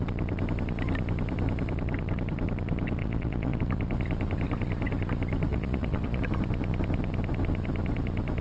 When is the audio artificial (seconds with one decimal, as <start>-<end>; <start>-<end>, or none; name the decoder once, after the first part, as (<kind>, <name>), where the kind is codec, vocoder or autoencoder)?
3.0-3.6 (vocoder, Vocos); 5.5-6.2